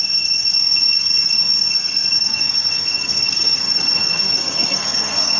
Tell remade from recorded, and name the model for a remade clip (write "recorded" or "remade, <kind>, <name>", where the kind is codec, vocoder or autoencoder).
remade, codec, SNAC